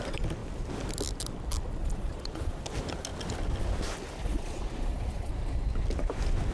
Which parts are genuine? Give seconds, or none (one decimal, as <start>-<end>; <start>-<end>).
0.0-1.8; 2.6-4.2; 5.3-6.5

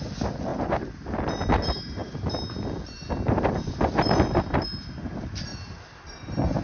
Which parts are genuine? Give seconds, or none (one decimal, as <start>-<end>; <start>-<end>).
0.0-6.6

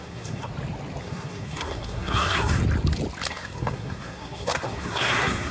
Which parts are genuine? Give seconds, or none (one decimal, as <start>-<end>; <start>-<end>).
0.5-1.0; 2.6-3.3

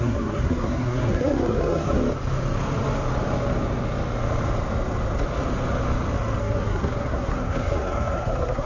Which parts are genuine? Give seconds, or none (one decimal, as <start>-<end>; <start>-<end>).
2.0-6.4